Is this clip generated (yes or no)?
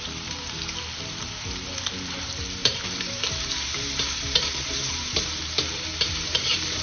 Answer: yes